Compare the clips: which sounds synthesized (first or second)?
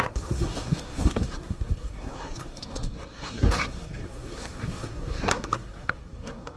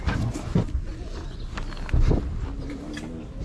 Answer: first